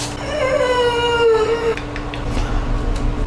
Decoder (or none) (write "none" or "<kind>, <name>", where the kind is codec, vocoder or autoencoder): none